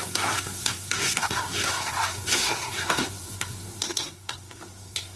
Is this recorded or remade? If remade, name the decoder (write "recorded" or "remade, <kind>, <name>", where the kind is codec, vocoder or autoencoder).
remade, codec, SNAC